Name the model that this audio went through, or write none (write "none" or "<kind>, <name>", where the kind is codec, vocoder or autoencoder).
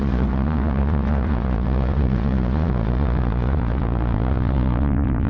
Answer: vocoder, Vocos